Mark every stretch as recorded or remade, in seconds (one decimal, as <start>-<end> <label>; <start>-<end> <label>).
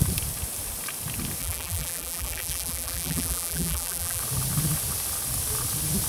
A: 0.0-1.4 recorded; 1.4-4.2 remade; 4.2-6.1 recorded